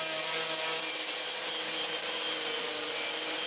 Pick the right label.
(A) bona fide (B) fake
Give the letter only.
A